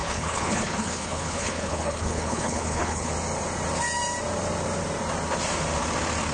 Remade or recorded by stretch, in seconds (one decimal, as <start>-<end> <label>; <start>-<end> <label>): 0.0-3.1 remade; 3.1-6.3 recorded